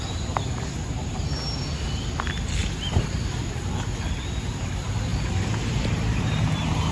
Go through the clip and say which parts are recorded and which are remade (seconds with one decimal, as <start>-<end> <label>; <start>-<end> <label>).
0.0-2.6 recorded; 2.6-3.7 remade; 3.7-5.1 recorded; 5.1-6.4 remade; 6.4-6.9 recorded